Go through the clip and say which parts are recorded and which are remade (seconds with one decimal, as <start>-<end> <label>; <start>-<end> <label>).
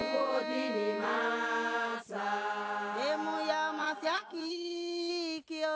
0.0-3.8 recorded; 3.8-5.1 remade; 5.1-5.8 recorded